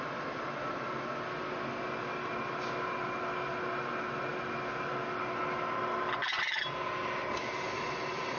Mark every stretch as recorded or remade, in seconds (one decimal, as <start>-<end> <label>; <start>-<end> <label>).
0.0-8.4 recorded